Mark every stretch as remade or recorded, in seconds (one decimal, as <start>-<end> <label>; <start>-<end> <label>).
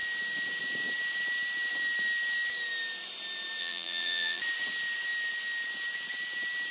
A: 0.0-3.6 recorded; 3.6-4.4 remade; 4.4-6.7 recorded